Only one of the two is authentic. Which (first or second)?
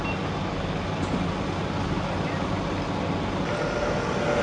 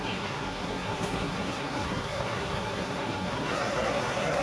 first